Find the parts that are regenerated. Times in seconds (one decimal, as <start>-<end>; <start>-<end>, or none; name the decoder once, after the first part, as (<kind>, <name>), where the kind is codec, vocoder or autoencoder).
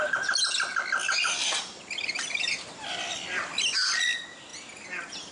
0.7-3.9 (vocoder, BigVGAN v2)